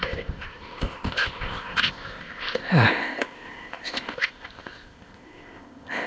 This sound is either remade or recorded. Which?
remade